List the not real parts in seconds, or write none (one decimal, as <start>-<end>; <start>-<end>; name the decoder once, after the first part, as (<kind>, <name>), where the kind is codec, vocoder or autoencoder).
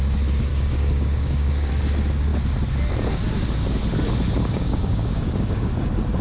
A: 0.5-1.7 (codec, DAC); 4.4-5.8